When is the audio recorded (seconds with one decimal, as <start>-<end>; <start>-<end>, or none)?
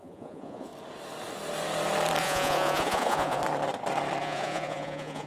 0.7-2.2; 3.4-4.2